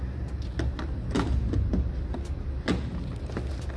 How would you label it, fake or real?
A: real